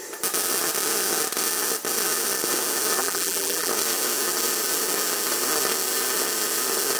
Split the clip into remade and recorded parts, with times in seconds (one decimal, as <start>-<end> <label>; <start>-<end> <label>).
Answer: 0.0-3.0 recorded; 3.0-3.7 remade; 3.7-7.0 recorded